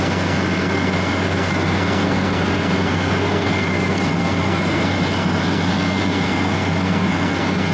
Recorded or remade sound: remade